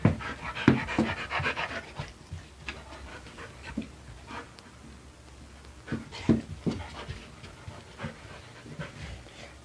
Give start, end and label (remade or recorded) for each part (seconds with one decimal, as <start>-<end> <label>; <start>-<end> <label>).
0.0-3.1 recorded; 3.1-3.7 remade; 3.7-9.6 recorded